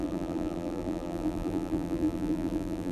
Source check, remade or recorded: remade